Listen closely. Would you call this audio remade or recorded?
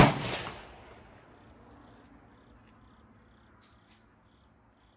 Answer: recorded